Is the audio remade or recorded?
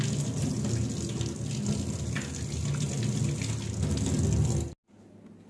recorded